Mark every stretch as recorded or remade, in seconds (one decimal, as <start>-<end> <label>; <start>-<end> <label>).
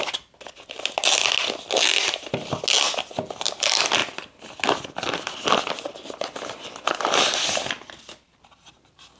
0.0-9.2 recorded